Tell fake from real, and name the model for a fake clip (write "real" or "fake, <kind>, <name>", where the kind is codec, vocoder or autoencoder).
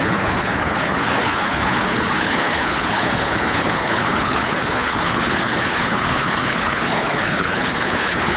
fake, codec, HILCodec